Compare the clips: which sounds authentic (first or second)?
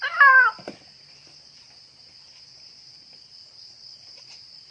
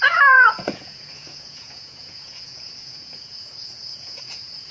first